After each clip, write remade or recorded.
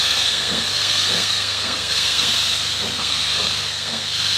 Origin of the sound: remade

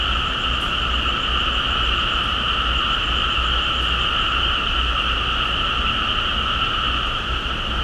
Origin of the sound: recorded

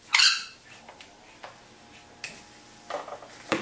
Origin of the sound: recorded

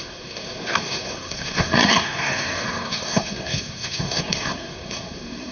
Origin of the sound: remade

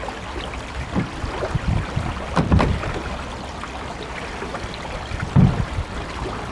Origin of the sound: recorded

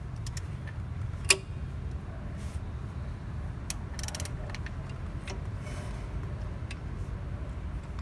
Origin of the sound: recorded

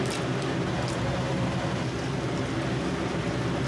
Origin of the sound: recorded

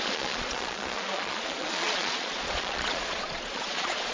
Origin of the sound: remade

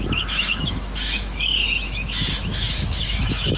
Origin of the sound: remade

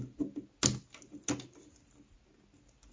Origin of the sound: recorded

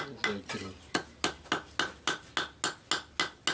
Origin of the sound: recorded